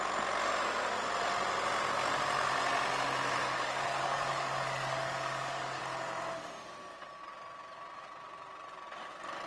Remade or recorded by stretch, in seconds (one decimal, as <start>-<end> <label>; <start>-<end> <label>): 0.0-3.4 recorded; 3.4-5.8 remade; 5.8-9.5 recorded